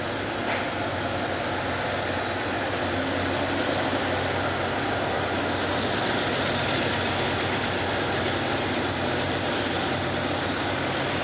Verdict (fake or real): real